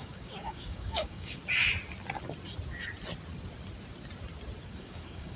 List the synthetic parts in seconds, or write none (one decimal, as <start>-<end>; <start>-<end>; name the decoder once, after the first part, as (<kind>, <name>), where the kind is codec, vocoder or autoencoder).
0.0-1.4 (codec, DAC); 4.6-5.4